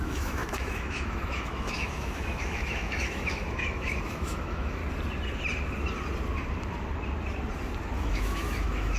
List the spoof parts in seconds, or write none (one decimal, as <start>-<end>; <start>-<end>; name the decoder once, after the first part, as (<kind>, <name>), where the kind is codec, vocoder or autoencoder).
0.0-4.8 (autoencoder, DAC-VAE); 8.0-9.0